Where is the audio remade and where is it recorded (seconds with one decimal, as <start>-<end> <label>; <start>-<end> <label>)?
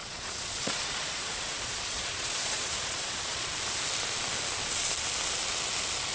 0.0-3.5 remade; 3.5-6.1 recorded